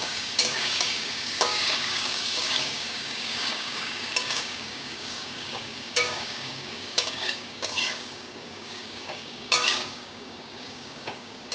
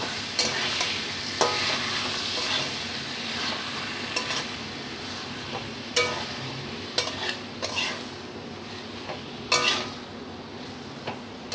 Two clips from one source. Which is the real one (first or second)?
second